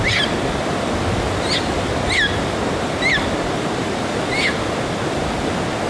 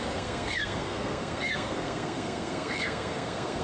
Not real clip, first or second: second